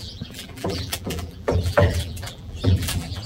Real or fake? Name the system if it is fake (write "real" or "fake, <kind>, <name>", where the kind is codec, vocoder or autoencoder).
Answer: fake, vocoder, BigVGAN v2